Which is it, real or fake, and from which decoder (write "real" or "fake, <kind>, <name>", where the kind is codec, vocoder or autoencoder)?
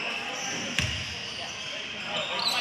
real